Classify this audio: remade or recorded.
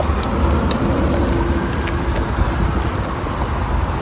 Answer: recorded